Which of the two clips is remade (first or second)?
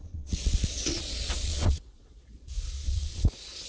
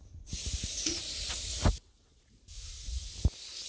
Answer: first